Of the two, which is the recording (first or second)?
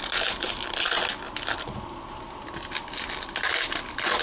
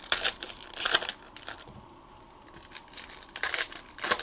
first